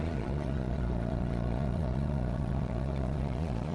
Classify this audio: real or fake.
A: fake